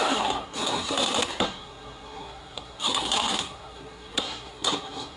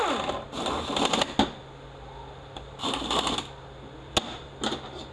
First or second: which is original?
second